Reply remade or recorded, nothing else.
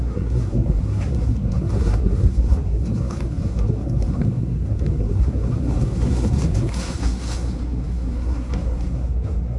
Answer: remade